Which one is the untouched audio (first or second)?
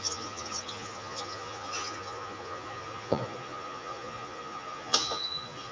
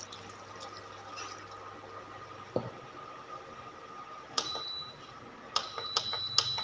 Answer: second